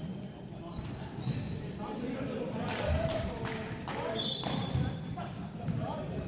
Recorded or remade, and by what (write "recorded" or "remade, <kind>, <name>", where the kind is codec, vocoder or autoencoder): remade, vocoder, BigVGAN v2